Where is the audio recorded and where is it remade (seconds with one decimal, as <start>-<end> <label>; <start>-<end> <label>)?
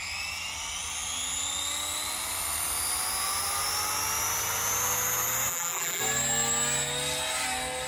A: 0.0-5.5 recorded; 5.5-6.0 remade; 6.0-7.9 recorded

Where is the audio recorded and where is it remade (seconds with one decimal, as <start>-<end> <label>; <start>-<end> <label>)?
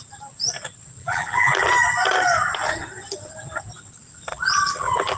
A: 0.0-1.0 recorded; 1.0-1.7 remade; 1.7-4.3 recorded; 4.3-5.2 remade